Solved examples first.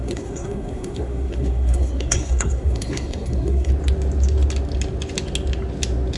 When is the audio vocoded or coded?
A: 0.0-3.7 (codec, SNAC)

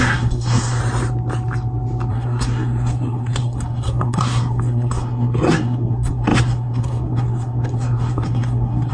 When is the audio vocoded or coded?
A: 0.0-0.8 (codec, SNAC); 2.1-8.9